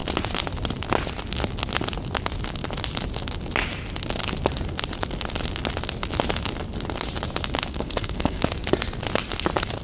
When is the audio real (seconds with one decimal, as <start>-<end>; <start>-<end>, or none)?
0.0-7.7; 8.4-9.8

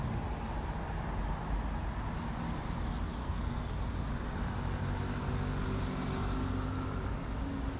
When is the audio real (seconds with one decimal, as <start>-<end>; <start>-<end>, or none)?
0.0-3.2; 3.8-7.8

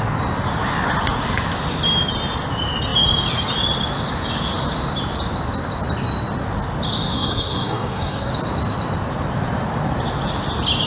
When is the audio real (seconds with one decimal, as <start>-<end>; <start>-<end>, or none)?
0.0-7.1; 8.3-10.9

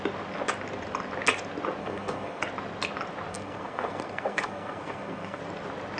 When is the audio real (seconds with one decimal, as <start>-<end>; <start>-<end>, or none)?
0.0-1.8; 2.4-3.3; 5.4-6.0

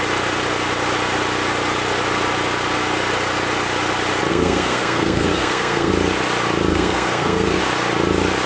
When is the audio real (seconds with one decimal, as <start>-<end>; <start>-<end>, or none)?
0.0-4.3; 5.9-6.7; 7.6-8.5

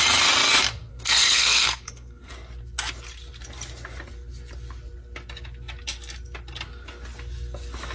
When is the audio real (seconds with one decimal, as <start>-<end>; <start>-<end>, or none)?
0.0-0.9; 2.3-7.9

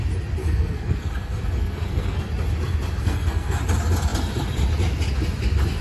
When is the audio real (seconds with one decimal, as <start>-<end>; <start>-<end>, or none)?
0.0-0.4; 2.3-3.0; 3.6-5.8

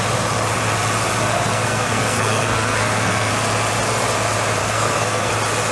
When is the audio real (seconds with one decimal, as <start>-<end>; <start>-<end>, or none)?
0.0-1.3; 3.3-4.6; 5.3-5.7